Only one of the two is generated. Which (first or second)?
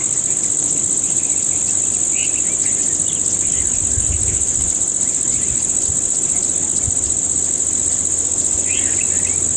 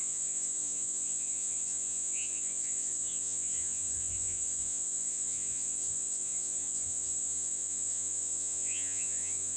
second